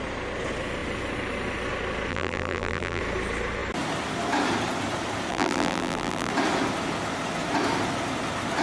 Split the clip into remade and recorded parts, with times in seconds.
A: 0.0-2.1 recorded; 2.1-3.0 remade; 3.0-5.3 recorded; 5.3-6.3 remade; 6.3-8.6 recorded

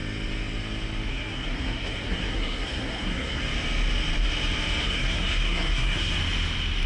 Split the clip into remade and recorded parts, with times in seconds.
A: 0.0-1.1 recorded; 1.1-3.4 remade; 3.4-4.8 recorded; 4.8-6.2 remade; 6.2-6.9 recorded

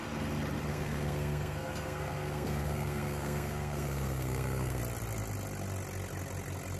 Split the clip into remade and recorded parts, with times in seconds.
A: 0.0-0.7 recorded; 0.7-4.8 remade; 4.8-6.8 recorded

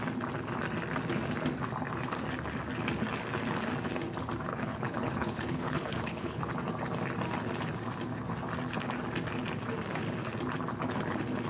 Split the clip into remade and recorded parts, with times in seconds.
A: 0.0-4.5 recorded; 4.5-6.5 remade; 6.5-11.5 recorded

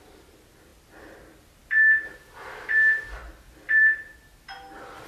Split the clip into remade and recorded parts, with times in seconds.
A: 0.0-5.1 recorded

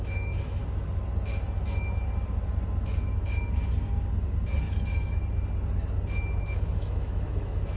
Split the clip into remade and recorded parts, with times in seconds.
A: 0.0-0.6 remade; 0.6-4.7 recorded; 4.7-5.2 remade; 5.2-6.4 recorded; 6.4-7.8 remade